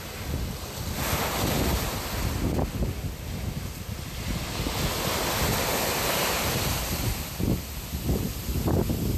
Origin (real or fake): real